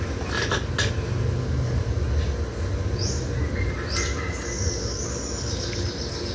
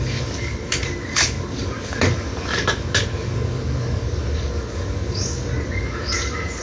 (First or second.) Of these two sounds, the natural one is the first